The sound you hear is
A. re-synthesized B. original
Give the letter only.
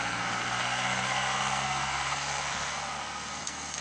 A